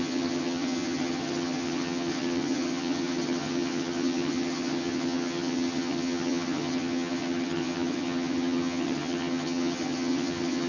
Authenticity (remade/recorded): remade